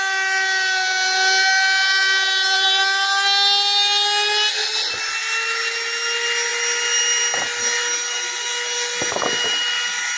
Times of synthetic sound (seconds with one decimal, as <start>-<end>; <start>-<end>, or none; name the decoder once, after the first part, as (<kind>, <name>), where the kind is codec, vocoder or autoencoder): none